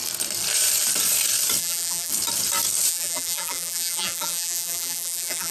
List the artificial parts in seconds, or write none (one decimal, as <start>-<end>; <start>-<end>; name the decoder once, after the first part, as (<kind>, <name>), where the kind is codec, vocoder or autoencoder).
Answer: 1.6-2.1 (vocoder, BigVGAN v2); 2.9-5.5

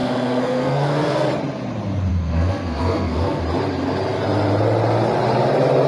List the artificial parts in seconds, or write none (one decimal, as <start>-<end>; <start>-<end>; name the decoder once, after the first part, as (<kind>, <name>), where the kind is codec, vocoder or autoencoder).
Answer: 0.0-1.3 (codec, SNAC); 2.1-3.4

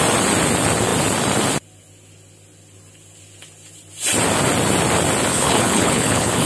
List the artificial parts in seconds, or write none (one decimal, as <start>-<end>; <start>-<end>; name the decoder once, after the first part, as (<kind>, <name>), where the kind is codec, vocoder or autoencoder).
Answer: 5.3-6.5 (codec, HILCodec)

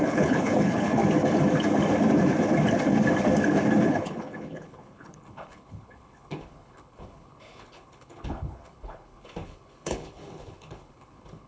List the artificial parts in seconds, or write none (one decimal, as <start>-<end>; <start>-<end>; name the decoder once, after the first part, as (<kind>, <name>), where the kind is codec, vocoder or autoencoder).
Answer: 0.0-1.0 (codec, HILCodec); 3.8-11.5

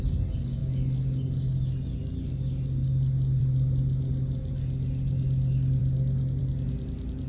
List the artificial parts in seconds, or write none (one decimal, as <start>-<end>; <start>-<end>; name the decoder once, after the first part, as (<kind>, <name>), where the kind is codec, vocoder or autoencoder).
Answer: none

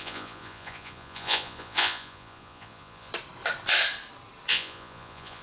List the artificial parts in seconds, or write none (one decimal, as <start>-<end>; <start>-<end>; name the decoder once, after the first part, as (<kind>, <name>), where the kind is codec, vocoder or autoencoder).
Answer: 0.0-3.1 (vocoder, Vocos); 4.5-5.4

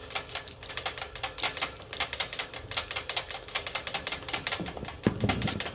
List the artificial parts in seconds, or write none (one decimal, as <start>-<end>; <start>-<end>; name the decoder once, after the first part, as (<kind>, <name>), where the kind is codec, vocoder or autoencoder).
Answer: none